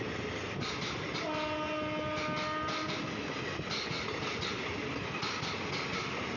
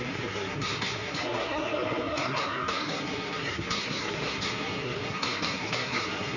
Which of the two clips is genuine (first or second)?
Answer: first